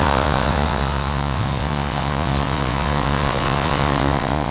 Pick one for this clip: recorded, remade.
remade